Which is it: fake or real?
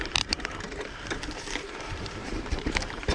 fake